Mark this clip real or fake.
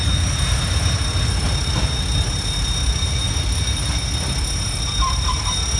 real